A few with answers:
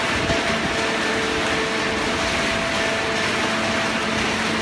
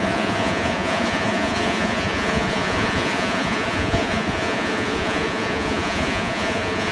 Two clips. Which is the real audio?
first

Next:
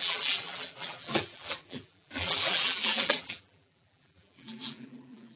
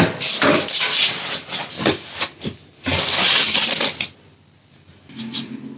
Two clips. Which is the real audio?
second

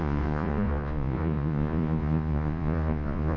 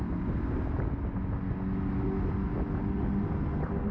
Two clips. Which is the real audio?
second